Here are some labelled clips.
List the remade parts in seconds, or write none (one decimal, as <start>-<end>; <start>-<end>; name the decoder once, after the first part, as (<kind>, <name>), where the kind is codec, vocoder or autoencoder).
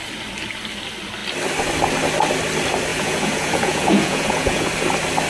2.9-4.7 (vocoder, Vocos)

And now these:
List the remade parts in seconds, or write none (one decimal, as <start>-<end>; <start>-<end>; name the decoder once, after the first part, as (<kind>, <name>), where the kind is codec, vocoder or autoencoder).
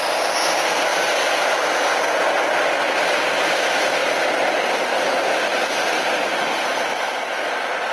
none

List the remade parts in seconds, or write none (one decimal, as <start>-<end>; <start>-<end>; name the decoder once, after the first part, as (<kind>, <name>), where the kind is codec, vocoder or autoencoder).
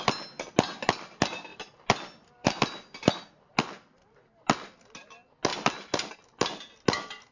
5.5-6.1 (vocoder, BigVGAN v2)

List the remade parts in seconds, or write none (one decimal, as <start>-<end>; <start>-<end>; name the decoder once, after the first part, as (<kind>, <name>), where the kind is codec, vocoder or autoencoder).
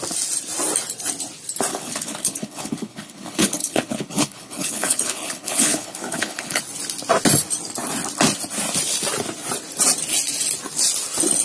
1.7-6.6 (codec, HILCodec)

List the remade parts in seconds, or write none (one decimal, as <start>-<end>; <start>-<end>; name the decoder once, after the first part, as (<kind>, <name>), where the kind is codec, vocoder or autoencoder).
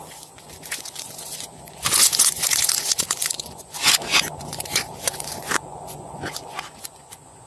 0.0-7.5 (vocoder, Vocos)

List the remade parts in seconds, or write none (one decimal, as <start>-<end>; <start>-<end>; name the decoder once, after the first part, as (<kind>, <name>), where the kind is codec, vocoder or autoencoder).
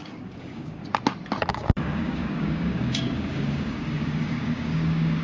0.0-0.8 (codec, DAC); 1.5-5.2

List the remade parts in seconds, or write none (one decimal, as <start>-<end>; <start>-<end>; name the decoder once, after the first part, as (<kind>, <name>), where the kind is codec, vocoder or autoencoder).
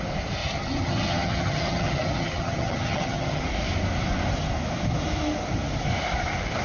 0.4-3.4 (vocoder, HiFi-GAN)